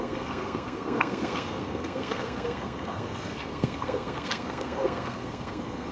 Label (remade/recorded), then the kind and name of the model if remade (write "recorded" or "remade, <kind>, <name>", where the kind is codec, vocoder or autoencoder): remade, codec, SNAC